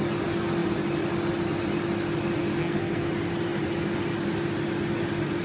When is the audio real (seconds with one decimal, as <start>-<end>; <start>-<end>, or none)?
0.0-2.6; 3.1-5.4